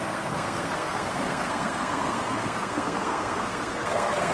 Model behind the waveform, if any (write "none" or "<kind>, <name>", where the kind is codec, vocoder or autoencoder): codec, SNAC